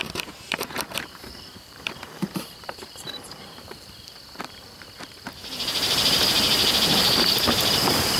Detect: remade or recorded remade